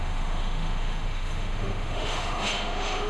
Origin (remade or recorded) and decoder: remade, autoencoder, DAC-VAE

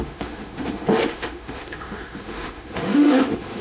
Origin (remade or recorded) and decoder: remade, autoencoder, DAC-VAE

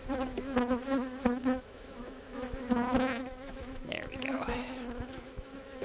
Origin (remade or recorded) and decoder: remade, autoencoder, DAC-VAE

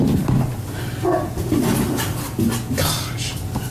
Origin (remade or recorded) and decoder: recorded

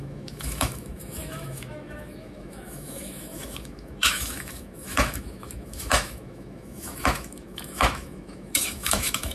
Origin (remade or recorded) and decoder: remade, autoencoder, DAC-VAE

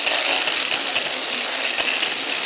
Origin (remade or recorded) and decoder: recorded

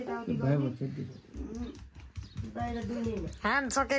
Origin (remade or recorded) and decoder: recorded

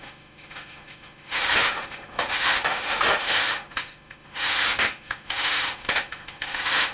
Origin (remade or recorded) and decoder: remade, autoencoder, DAC-VAE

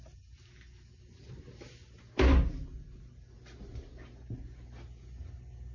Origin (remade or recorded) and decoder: recorded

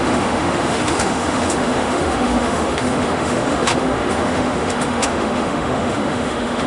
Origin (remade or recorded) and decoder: remade, autoencoder, DAC-VAE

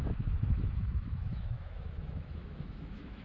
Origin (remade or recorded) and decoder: remade, autoencoder, DAC-VAE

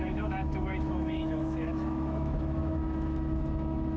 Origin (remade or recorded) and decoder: remade, autoencoder, DAC-VAE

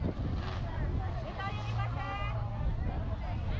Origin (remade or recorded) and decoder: recorded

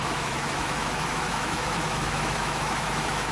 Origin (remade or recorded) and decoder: remade, autoencoder, DAC-VAE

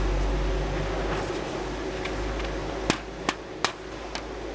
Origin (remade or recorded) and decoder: recorded